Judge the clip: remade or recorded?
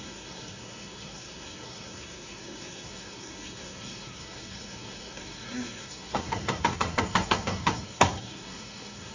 remade